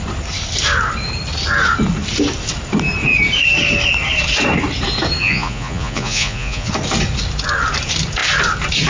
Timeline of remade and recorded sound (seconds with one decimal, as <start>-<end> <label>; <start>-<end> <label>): 0.0-5.2 recorded; 5.2-6.7 remade; 6.7-8.9 recorded